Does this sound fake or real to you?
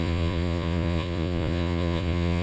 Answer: fake